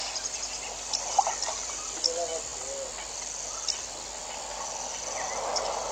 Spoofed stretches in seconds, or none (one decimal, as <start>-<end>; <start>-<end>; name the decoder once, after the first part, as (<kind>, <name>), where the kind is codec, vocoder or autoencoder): none